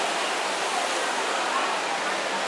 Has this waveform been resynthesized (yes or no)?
no